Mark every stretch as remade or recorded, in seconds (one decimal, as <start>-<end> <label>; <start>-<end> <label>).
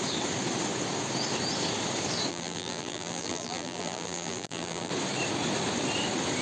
0.0-2.3 recorded; 2.3-4.9 remade; 4.9-6.4 recorded